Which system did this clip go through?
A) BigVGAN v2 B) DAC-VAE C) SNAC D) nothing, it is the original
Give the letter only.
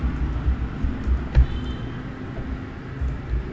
D